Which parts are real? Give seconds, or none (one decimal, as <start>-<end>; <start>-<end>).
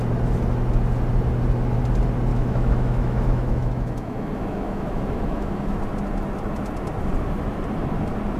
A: 0.0-2.3; 5.8-8.4